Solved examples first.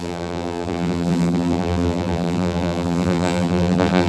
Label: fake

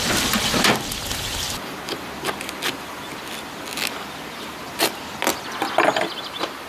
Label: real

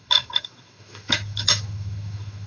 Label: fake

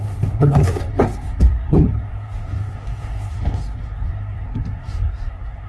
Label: fake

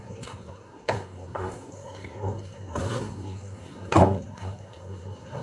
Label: fake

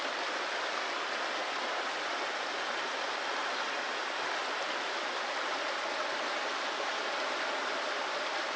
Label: real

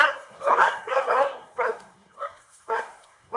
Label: fake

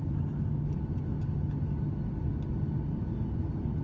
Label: real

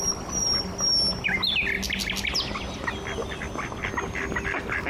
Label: real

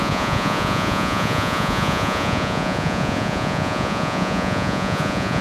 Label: fake